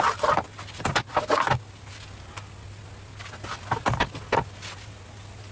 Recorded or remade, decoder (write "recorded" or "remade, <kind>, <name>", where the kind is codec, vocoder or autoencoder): recorded